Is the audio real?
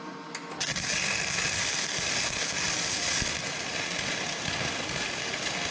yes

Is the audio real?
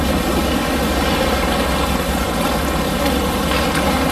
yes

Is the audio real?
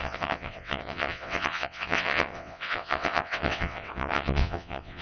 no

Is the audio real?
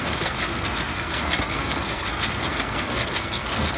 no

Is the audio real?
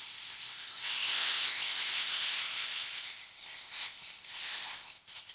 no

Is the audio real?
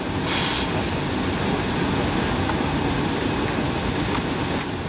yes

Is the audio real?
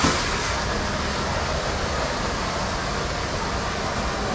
yes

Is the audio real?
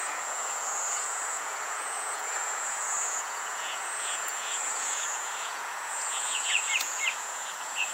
no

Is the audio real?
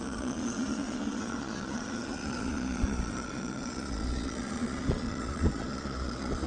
no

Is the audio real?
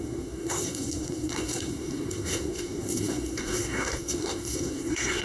no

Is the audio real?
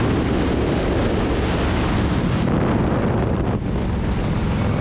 yes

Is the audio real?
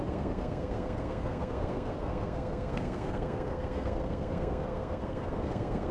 no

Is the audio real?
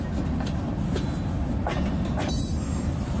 no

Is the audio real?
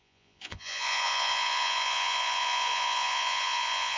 no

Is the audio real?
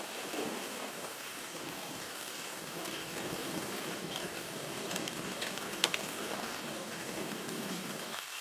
no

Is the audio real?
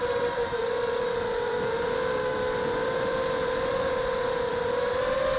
no